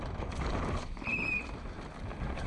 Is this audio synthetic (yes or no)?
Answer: no